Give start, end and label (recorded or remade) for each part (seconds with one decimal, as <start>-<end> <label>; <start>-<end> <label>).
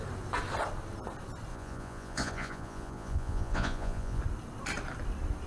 0.0-1.5 recorded; 1.5-4.2 remade; 4.2-5.5 recorded